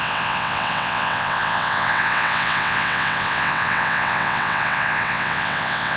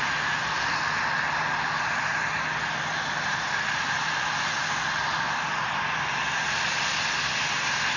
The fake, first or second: first